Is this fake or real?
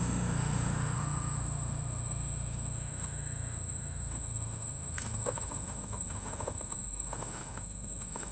fake